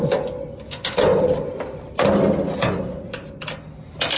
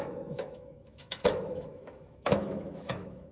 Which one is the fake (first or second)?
second